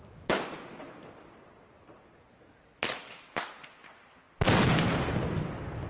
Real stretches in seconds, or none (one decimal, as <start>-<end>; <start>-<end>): 0.0-5.9